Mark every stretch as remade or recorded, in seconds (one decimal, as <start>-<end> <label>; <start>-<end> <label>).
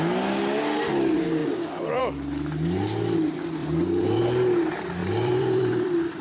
0.0-1.4 recorded; 1.4-2.0 remade; 2.0-3.6 recorded; 3.6-4.2 remade; 4.2-5.0 recorded; 5.0-6.2 remade